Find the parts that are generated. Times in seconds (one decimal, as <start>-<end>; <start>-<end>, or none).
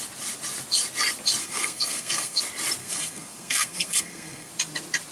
1.4-2.4; 2.8-4.5